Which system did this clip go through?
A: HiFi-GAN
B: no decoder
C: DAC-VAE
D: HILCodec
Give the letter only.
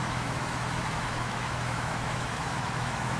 C